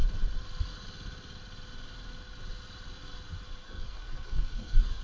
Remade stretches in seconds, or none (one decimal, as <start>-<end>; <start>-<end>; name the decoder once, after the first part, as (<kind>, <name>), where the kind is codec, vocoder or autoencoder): 3.6-5.0 (codec, SNAC)